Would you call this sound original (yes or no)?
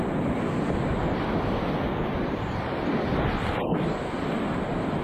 yes